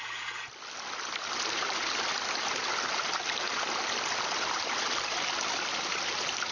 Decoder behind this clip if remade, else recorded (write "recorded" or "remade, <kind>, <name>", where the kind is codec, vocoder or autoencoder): recorded